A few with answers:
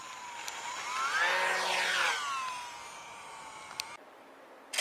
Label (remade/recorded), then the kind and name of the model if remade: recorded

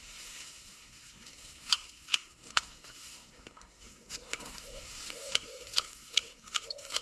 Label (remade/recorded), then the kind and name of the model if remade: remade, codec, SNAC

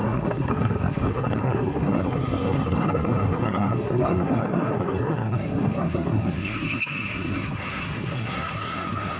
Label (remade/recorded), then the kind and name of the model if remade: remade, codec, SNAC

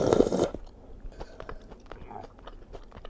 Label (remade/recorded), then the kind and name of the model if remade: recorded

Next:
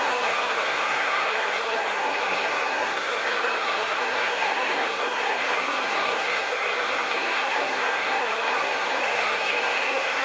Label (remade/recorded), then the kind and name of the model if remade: remade, codec, SNAC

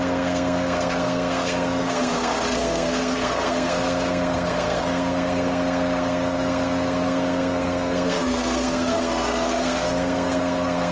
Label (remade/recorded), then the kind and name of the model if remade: remade, codec, SNAC